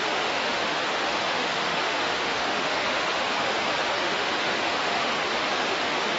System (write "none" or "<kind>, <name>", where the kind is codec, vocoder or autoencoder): autoencoder, DAC-VAE